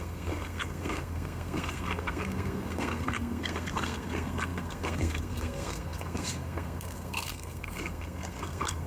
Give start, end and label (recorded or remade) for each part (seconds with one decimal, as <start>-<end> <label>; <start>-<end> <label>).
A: 0.0-8.9 remade